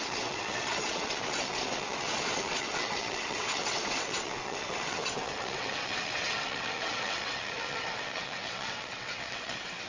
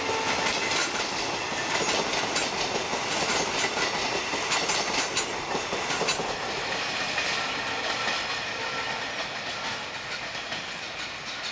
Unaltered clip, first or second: second